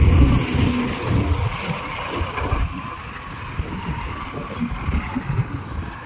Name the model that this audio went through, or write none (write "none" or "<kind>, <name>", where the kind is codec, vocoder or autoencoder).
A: none